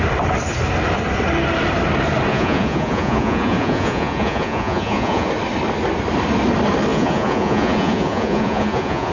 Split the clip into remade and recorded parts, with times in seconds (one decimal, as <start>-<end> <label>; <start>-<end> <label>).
0.0-2.3 recorded; 2.3-5.3 remade; 5.3-6.9 recorded; 6.9-9.1 remade